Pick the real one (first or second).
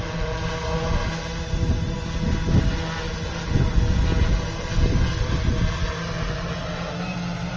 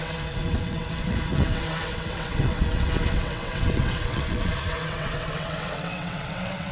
first